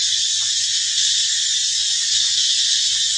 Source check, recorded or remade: recorded